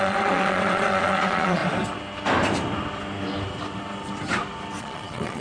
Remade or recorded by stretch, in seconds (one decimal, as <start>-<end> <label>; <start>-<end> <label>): 0.0-1.6 remade; 1.6-4.8 recorded; 4.8-5.4 remade